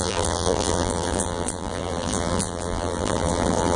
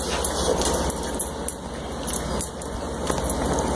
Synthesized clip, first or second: first